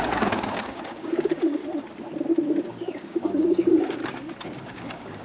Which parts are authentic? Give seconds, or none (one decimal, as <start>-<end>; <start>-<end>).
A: 1.6-2.7; 4.0-4.6